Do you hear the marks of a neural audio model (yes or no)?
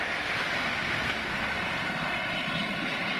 no